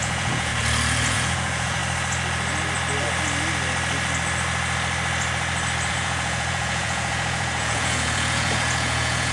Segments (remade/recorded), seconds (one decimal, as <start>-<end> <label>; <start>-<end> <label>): 0.0-0.5 remade; 0.5-1.1 recorded; 1.1-1.8 remade; 1.8-5.9 recorded; 5.9-9.3 remade